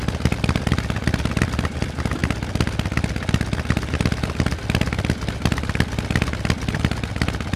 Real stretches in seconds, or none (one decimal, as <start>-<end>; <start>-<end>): 0.0-7.6